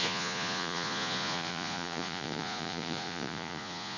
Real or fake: fake